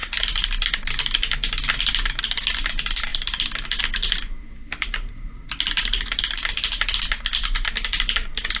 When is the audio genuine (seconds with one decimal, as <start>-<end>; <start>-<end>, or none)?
0.0-8.6